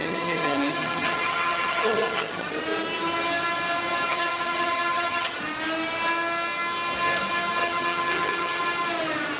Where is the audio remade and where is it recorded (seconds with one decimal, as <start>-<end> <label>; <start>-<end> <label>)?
0.0-2.6 remade; 2.6-4.1 recorded; 4.1-5.4 remade; 5.4-7.6 recorded; 7.6-8.6 remade; 8.6-9.4 recorded

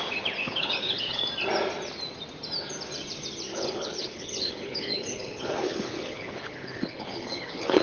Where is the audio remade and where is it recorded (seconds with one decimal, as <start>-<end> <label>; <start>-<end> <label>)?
0.0-0.4 recorded; 0.4-1.2 remade; 1.2-3.5 recorded; 3.5-7.8 remade

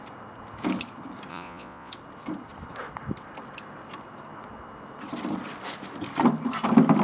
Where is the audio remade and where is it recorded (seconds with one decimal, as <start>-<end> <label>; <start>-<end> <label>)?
0.0-1.3 recorded; 1.3-1.9 remade; 1.9-7.0 recorded

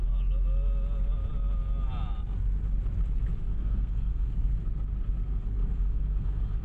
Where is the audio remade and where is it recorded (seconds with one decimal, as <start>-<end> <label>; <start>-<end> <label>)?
0.0-3.4 recorded; 3.4-4.6 remade; 4.6-5.2 recorded; 5.2-6.6 remade

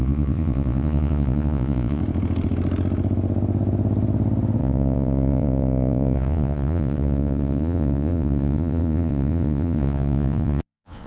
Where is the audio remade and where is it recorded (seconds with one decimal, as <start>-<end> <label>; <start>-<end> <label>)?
0.0-2.0 remade; 2.0-4.6 recorded; 4.6-11.1 remade

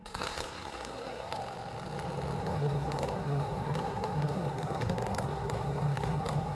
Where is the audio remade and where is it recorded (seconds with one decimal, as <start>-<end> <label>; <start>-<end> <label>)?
0.0-1.4 remade; 1.4-2.4 recorded; 2.4-6.5 remade